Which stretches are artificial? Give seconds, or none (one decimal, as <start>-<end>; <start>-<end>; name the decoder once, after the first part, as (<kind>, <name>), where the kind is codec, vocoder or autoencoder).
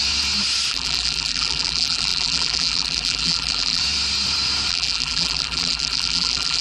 0.7-3.8 (vocoder, BigVGAN v2); 4.7-6.6